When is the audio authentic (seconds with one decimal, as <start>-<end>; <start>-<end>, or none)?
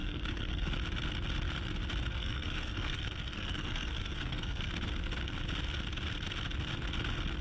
0.7-2.1; 4.7-7.4